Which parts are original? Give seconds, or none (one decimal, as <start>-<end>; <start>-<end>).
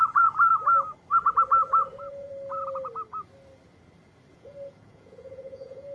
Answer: 0.5-1.8; 2.3-4.3